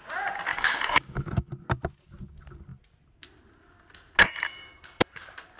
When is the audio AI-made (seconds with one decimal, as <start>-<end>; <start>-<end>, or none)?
0.5-1.5